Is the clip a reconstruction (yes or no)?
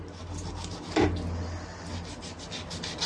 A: no